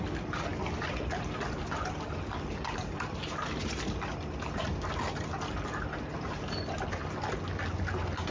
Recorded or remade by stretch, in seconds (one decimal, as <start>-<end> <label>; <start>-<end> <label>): 0.0-8.3 recorded